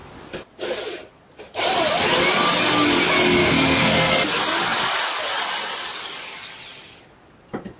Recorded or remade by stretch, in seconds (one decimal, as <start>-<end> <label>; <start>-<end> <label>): 0.0-3.4 recorded; 3.4-4.1 remade; 4.1-7.8 recorded